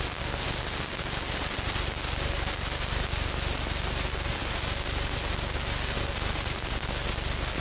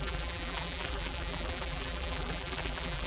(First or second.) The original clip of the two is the first